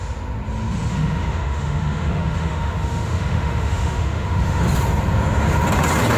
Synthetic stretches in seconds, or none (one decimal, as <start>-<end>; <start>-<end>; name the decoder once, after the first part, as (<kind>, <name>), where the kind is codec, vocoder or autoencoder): 0.9-4.6 (autoencoder, DAC-VAE)